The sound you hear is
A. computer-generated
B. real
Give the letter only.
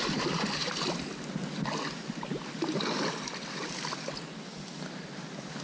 B